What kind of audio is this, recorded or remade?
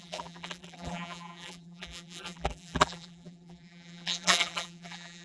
remade